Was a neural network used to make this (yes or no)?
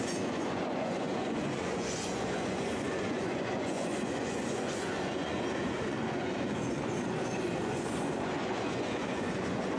yes